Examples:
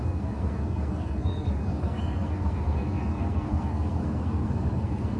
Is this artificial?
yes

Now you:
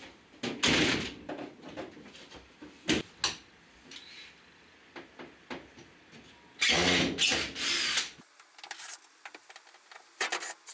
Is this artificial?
no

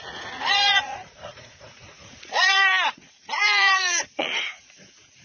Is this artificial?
yes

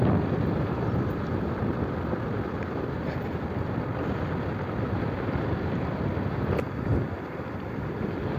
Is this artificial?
yes